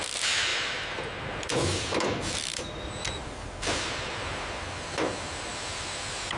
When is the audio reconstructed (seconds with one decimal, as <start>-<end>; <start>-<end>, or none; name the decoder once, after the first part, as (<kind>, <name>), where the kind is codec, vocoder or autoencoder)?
1.7-5.5 (vocoder, BigVGAN v2)